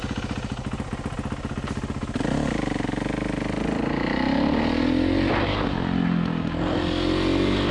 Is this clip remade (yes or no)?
no